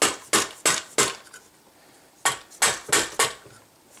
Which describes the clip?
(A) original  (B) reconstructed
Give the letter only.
A